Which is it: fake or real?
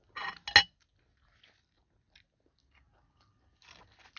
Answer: real